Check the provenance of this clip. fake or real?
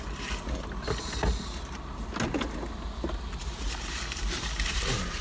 real